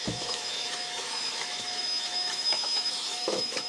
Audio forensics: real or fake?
fake